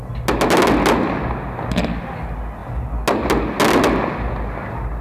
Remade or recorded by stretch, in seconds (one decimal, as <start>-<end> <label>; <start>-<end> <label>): 0.0-5.0 recorded